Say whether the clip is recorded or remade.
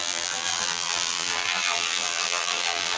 remade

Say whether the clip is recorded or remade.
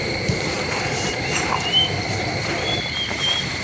remade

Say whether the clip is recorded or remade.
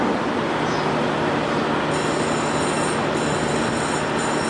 recorded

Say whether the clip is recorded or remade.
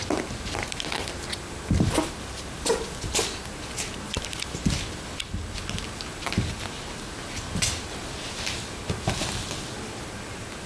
recorded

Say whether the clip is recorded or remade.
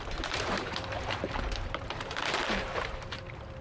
remade